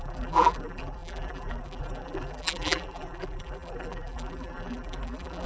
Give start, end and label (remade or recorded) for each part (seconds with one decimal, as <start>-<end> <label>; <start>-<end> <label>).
0.0-5.5 remade